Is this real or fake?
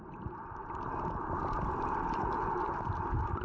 real